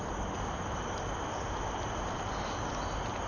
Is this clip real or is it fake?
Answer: real